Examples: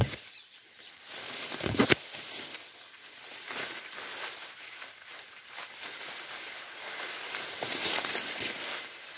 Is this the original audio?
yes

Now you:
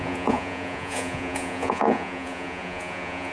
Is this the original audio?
no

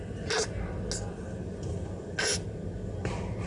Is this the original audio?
yes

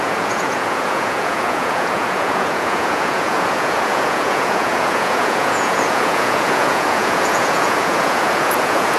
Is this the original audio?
no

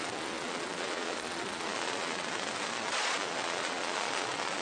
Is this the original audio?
no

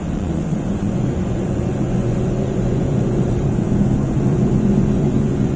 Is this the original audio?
no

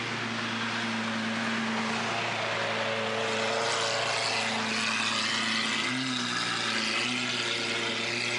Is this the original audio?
yes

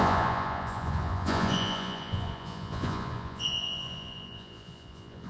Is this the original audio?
no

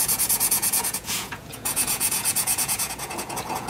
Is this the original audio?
no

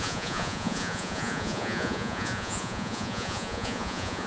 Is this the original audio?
no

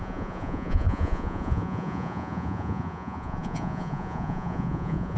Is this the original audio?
no